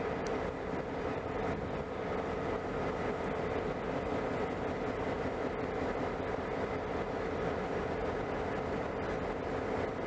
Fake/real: real